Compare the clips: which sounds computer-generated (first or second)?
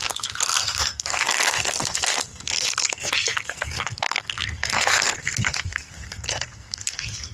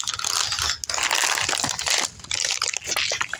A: first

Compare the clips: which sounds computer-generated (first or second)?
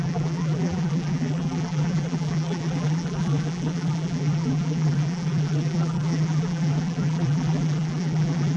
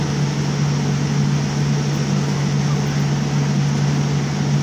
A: first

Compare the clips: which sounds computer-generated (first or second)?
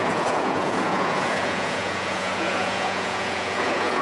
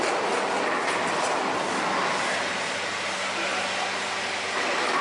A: first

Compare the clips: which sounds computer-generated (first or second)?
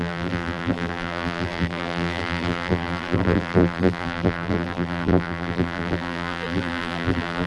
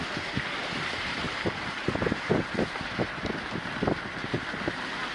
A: first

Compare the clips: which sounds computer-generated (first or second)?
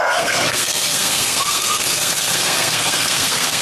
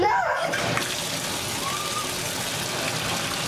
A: first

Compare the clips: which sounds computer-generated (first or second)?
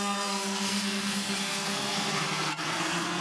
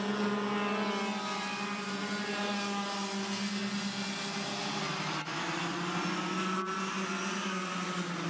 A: first